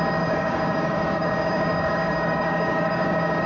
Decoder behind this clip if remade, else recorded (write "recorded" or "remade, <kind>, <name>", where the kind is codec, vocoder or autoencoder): remade, codec, DAC